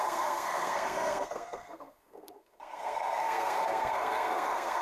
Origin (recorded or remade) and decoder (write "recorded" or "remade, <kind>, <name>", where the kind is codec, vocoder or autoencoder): remade, codec, SNAC